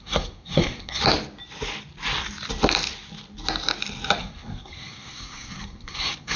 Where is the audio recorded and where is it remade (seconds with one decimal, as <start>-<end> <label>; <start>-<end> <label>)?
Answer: 0.0-1.0 remade; 1.0-4.2 recorded; 4.2-6.4 remade